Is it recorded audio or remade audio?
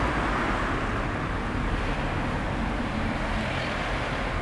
recorded